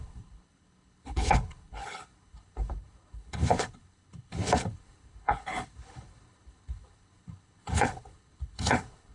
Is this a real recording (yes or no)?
no